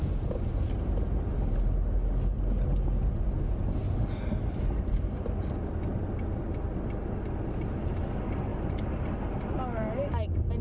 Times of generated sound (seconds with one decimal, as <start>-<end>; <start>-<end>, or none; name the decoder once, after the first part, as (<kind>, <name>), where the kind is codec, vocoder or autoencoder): none